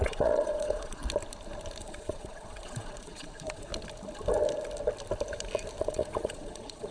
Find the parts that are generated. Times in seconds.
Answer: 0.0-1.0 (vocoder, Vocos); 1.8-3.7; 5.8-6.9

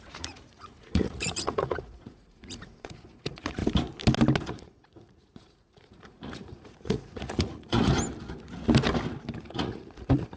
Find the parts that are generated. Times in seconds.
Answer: 0.0-3.6 (vocoder, Vocos); 4.5-7.9; 9.4-10.4

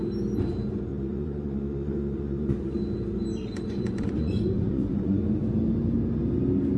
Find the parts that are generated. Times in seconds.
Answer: 0.9-2.8 (vocoder, Vocos); 3.4-5.2

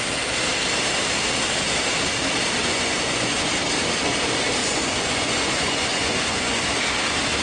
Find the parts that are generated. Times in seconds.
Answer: 2.6-3.5 (vocoder, Vocos); 4.6-6.6

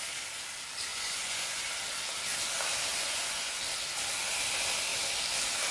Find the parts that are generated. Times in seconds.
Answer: 0.9-1.6 (vocoder, Vocos); 2.9-3.5